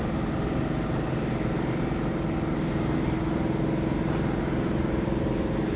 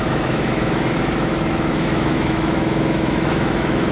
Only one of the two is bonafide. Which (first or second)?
first